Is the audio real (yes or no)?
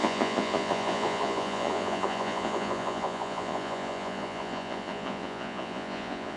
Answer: no